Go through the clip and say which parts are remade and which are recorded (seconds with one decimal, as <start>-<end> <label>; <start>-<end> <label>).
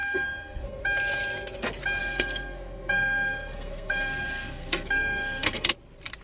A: 0.0-0.8 remade; 0.8-2.0 recorded; 2.0-5.7 remade; 5.7-6.2 recorded